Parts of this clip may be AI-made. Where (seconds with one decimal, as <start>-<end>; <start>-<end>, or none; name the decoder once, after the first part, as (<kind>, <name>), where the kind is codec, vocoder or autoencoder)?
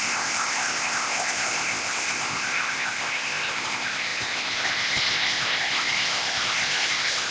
0.0-7.3 (codec, ZipCodec)